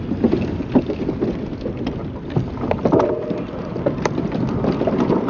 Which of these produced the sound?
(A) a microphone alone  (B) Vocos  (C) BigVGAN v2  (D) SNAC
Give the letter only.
A